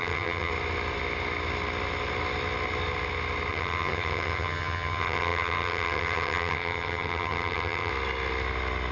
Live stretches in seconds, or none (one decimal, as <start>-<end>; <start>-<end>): 0.5-3.5; 7.9-8.9